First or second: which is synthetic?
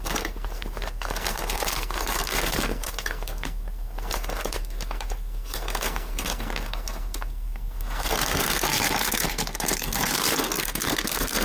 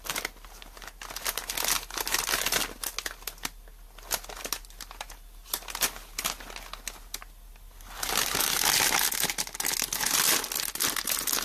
first